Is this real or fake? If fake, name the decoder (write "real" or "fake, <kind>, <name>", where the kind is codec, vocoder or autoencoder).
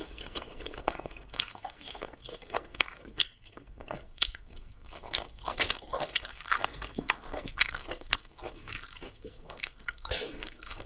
fake, codec, SNAC